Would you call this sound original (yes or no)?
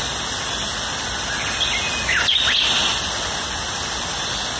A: yes